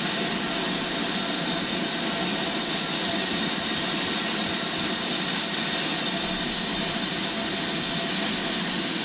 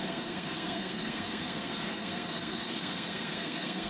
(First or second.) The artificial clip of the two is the second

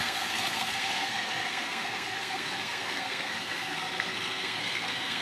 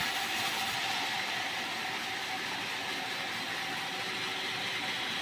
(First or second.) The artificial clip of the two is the first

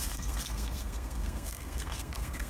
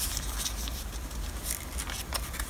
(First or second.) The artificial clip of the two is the first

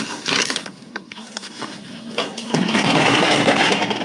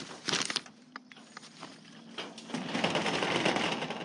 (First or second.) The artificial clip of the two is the first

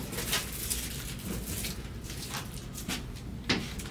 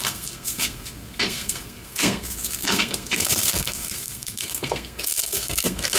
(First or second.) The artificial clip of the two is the second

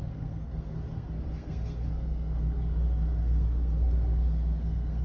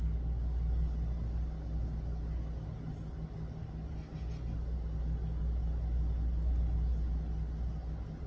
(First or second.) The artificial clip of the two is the first